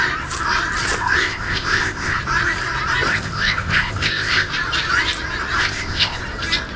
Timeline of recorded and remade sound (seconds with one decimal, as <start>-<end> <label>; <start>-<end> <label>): 0.0-1.0 recorded; 1.0-2.2 remade; 2.2-3.1 recorded; 3.1-4.5 remade; 4.5-5.6 recorded; 5.6-6.2 remade; 6.2-6.8 recorded

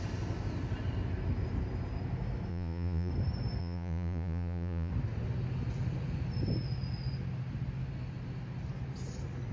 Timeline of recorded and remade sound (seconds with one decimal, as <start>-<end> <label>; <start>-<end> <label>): 0.0-2.5 recorded; 2.5-3.1 remade; 3.1-3.6 recorded; 3.6-4.9 remade; 4.9-9.5 recorded

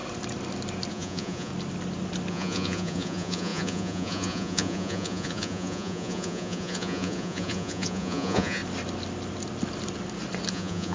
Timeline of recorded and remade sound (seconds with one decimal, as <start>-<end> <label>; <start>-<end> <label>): 0.0-0.9 recorded; 0.9-1.5 remade; 1.5-2.3 recorded; 2.3-8.6 remade; 8.6-10.5 recorded; 10.5-10.9 remade

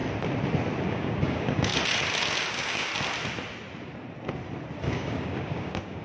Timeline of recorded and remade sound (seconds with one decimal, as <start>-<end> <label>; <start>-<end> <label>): 0.0-0.9 recorded; 0.9-1.7 remade; 1.7-2.5 recorded; 2.5-2.9 remade; 2.9-4.8 recorded; 4.8-6.0 remade

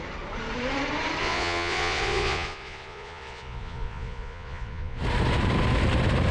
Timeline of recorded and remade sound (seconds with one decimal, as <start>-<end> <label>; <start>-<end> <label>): 0.0-1.2 recorded; 1.2-5.0 remade; 5.0-6.3 recorded

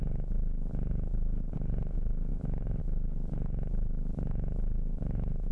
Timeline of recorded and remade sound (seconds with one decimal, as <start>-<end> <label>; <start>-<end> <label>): 0.0-5.5 recorded

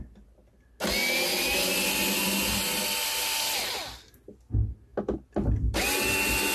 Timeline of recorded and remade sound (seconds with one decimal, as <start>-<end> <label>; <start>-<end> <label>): 0.0-6.5 recorded

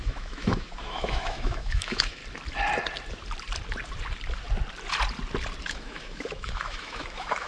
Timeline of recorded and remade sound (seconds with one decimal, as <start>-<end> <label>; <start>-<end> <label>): 0.0-2.2 remade; 2.2-5.6 recorded; 5.6-7.5 remade